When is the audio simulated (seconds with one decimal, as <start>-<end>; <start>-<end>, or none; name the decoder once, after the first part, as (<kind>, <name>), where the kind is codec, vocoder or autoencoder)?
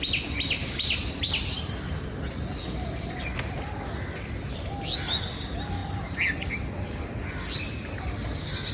0.6-1.2 (vocoder, BigVGAN v2)